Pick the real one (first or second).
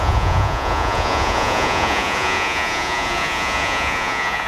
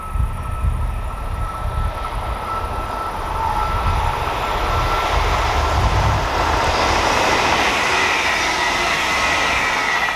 second